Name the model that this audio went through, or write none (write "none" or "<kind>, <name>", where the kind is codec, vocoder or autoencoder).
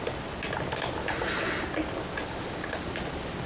none